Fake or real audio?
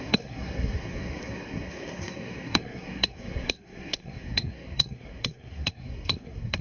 fake